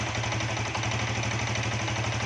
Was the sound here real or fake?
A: real